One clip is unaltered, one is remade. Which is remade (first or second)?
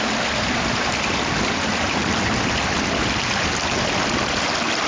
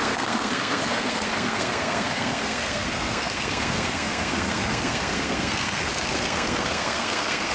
second